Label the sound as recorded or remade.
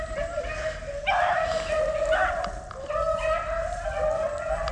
recorded